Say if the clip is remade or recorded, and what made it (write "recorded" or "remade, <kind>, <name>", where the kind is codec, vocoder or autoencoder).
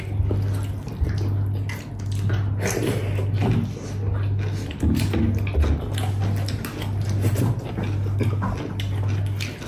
recorded